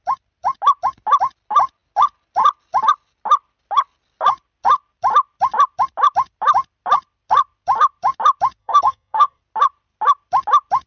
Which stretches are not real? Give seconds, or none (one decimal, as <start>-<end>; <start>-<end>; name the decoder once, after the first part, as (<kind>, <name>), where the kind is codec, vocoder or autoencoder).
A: 8.6-9.4 (codec, SNAC)